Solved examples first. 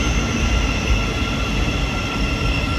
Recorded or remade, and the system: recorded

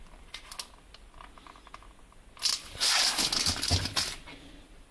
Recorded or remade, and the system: recorded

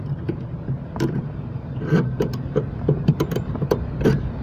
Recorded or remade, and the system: remade, vocoder, BigVGAN v2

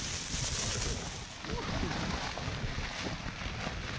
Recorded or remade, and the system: recorded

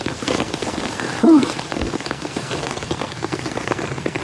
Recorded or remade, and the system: remade, codec, SNAC